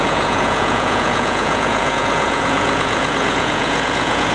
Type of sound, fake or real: fake